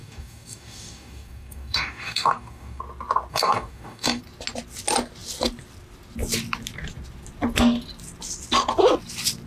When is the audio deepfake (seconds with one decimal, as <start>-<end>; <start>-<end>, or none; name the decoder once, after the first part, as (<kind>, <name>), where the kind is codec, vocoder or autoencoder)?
0.0-2.8 (codec, DAC); 3.3-4.2